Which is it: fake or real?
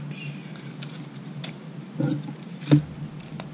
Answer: real